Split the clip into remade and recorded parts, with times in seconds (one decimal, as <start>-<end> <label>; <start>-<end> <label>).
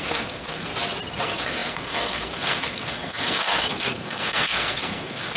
0.0-0.7 remade; 0.7-1.2 recorded; 1.2-5.4 remade